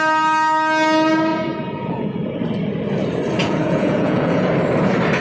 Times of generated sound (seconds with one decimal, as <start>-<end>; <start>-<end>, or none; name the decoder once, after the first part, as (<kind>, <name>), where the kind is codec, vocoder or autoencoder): 1.3-2.4 (vocoder, Vocos); 3.4-4.5